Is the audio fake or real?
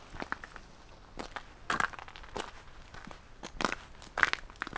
real